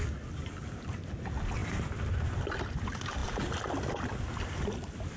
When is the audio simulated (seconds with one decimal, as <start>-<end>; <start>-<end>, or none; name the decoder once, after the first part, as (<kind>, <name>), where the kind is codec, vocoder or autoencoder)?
none